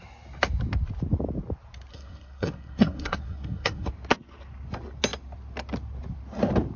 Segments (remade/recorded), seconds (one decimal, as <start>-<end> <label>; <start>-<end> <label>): 0.0-1.9 recorded; 1.9-3.9 remade; 3.9-6.8 recorded